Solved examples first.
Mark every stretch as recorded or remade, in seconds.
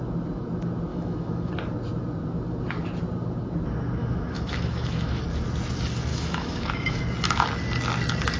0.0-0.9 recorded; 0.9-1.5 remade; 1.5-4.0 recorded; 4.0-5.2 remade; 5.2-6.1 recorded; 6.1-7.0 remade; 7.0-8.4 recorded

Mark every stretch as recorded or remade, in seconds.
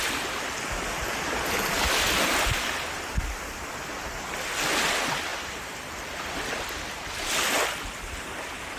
0.0-5.3 recorded; 5.3-6.6 remade; 6.6-8.8 recorded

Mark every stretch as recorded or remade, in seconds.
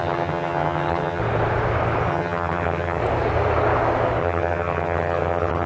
0.0-1.2 remade; 1.2-2.1 recorded; 2.1-3.0 remade; 3.0-4.2 recorded; 4.2-5.7 remade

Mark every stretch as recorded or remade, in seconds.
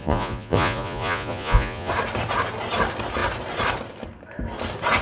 0.0-1.9 remade; 1.9-5.0 recorded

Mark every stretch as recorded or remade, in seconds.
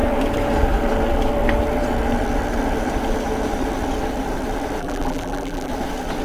0.0-4.8 recorded; 4.8-5.7 remade; 5.7-6.2 recorded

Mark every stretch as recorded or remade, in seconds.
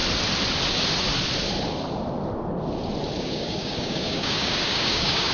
0.0-3.2 recorded; 3.2-5.3 remade